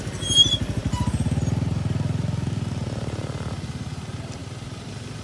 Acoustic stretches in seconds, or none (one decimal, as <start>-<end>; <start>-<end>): 0.0-5.2